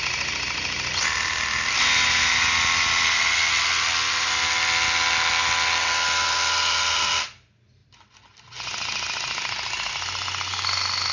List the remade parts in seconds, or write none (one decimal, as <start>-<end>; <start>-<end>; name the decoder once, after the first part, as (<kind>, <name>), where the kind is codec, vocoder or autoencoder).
none

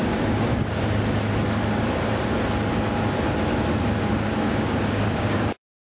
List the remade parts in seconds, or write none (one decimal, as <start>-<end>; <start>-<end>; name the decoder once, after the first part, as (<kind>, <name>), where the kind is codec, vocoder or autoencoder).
0.0-0.5 (codec, DAC); 4.0-5.8

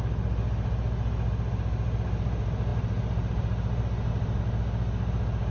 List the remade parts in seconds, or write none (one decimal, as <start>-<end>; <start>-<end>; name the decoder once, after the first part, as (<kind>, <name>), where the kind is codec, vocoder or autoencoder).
none